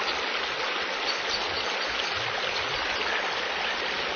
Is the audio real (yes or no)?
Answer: yes